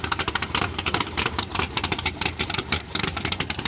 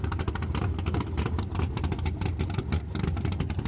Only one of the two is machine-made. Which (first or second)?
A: first